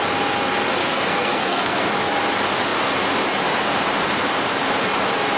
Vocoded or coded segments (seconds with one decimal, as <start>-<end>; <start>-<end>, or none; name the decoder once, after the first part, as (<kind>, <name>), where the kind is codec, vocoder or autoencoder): 0.8-1.9 (codec, SNAC)